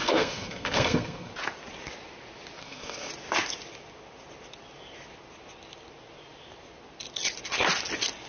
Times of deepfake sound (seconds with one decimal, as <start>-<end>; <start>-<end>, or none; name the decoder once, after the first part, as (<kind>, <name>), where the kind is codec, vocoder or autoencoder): 0.0-1.3 (codec, SNAC); 2.6-3.1